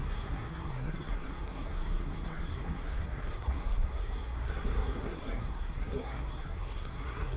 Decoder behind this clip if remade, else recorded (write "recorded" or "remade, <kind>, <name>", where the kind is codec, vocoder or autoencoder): remade, codec, SNAC